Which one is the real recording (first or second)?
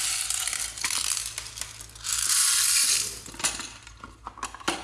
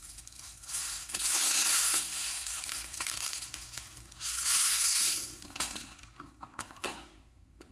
first